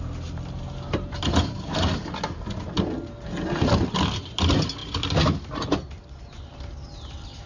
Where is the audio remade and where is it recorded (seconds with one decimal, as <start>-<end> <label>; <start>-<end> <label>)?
0.0-7.5 recorded